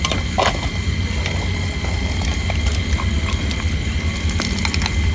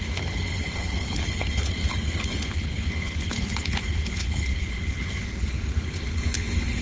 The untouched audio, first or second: first